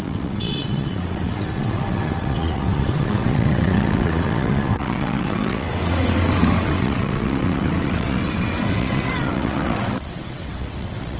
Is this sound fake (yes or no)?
yes